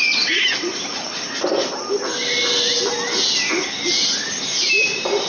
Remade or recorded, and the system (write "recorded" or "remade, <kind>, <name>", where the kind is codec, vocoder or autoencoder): recorded